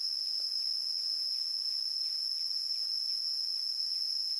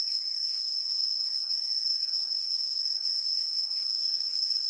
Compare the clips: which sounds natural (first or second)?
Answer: first